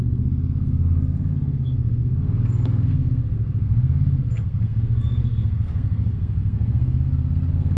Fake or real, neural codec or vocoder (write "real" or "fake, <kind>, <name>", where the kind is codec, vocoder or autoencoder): fake, codec, SNAC